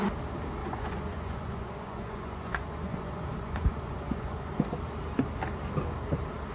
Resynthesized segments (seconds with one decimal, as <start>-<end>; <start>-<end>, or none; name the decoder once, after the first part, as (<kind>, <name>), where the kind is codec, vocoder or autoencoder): 0.6-4.5 (vocoder, Vocos)